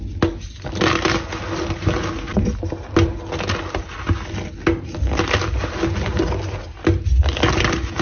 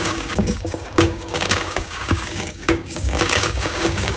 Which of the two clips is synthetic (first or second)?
second